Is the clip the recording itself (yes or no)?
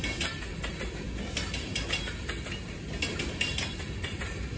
yes